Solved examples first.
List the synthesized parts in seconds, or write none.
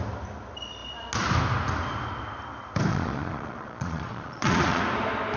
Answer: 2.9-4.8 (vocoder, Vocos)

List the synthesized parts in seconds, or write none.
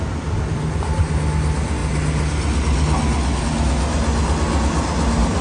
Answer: none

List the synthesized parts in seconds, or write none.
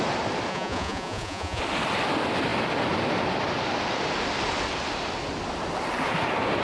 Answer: 0.5-1.6 (vocoder, Vocos)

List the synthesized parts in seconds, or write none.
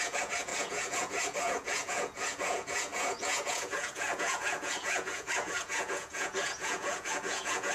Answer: 0.0-7.7 (vocoder, Vocos)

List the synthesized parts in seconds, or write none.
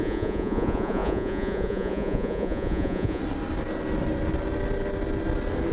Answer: 0.0-3.2 (vocoder, Vocos)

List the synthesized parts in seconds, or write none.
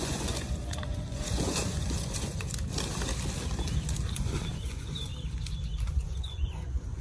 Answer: 0.0-2.5 (vocoder, Vocos); 4.1-5.1; 5.9-7.0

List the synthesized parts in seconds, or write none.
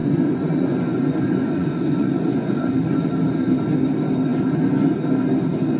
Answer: 0.0-2.7 (vocoder, Vocos); 4.3-4.9